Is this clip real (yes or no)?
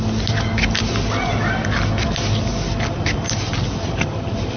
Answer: yes